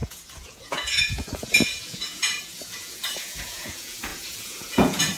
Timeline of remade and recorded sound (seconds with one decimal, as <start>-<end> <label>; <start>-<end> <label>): 0.0-5.2 remade